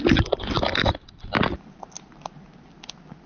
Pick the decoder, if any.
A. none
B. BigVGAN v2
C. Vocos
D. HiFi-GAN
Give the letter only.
A